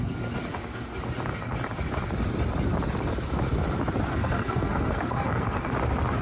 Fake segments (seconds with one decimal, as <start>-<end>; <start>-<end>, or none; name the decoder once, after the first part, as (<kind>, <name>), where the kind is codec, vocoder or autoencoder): 4.1-5.7 (codec, SNAC)